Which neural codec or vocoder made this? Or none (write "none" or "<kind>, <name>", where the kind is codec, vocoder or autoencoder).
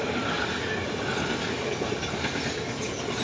none